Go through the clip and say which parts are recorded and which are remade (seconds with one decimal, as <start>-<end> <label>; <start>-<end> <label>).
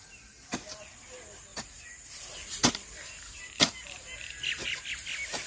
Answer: 0.0-1.5 recorded; 1.5-4.8 remade; 4.8-5.5 recorded